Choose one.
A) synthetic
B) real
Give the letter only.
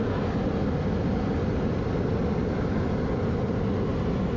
B